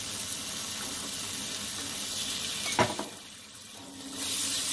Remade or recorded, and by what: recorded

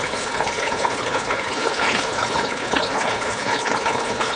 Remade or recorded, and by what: remade, codec, HILCodec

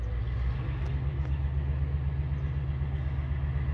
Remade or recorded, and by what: recorded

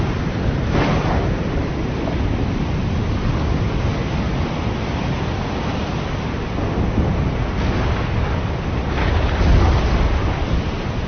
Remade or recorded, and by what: recorded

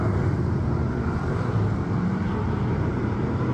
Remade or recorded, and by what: remade, vocoder, BigVGAN v2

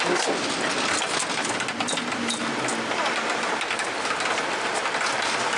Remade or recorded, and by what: recorded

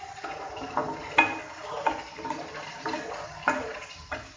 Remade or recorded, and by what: recorded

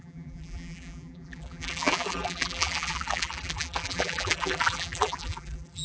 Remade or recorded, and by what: remade, vocoder, BigVGAN v2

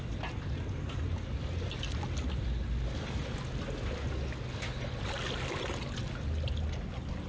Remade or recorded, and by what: recorded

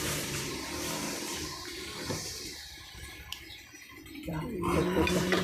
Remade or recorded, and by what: remade, vocoder, BigVGAN v2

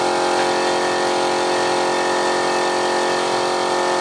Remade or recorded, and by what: recorded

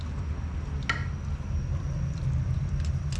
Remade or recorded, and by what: recorded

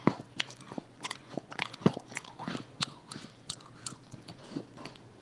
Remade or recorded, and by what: remade, vocoder, Vocos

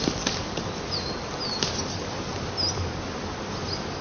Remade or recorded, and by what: recorded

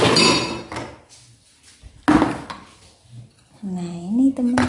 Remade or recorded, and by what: recorded